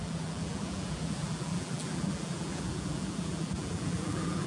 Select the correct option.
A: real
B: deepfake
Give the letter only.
B